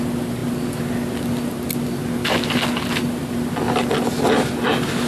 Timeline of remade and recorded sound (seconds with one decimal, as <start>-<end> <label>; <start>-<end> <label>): 0.0-5.1 recorded